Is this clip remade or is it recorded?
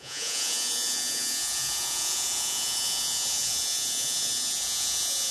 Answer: remade